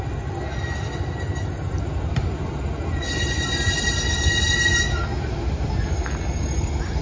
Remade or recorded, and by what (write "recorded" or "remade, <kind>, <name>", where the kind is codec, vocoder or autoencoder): recorded